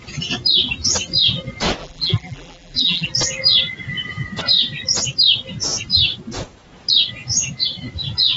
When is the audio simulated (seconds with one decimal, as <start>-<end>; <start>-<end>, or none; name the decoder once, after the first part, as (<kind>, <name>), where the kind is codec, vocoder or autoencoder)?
1.8-3.1 (vocoder, BigVGAN v2)